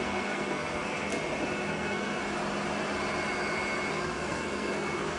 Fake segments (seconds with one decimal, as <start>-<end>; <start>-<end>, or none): 0.0-1.1; 1.7-2.2; 3.9-5.2